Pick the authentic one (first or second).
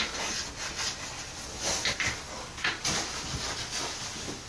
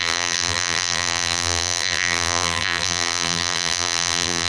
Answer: first